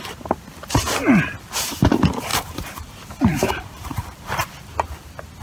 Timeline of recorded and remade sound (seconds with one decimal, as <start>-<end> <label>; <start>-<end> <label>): 0.0-2.3 recorded; 2.3-4.5 remade; 4.5-5.4 recorded